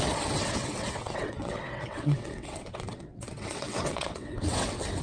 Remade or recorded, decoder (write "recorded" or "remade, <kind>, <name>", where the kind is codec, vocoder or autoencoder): remade, vocoder, WaveNeXt